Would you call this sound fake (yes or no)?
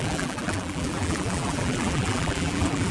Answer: yes